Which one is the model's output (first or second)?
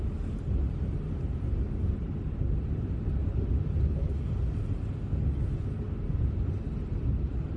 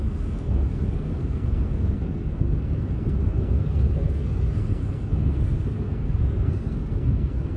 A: second